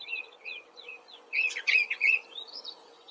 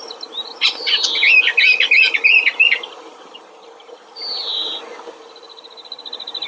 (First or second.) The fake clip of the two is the first